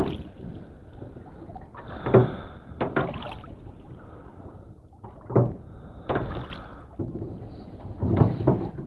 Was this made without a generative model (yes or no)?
yes